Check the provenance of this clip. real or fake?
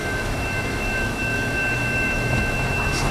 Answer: fake